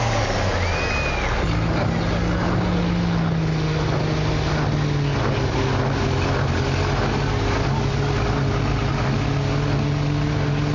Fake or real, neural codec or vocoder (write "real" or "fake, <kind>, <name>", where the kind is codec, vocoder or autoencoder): real